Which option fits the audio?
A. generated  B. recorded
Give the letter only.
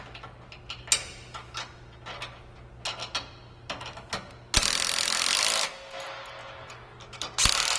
B